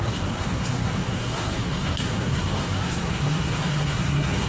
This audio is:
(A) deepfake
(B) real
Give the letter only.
A